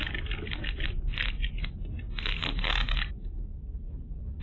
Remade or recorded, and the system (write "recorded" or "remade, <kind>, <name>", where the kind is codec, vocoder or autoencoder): recorded